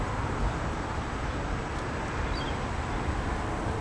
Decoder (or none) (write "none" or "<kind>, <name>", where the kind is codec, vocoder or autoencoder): none